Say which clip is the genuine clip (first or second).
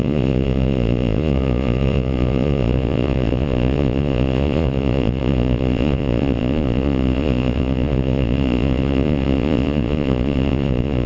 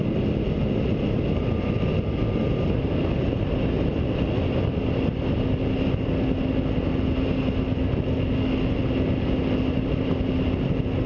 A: second